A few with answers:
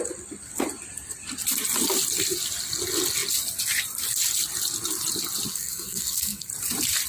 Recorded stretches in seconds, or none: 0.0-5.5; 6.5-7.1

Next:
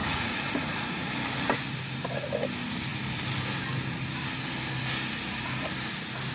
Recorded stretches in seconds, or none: 1.1-6.3